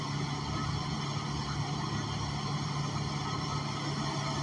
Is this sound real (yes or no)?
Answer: yes